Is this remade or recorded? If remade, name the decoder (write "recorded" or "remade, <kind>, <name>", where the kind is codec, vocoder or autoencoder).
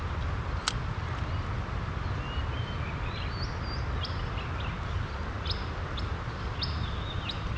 recorded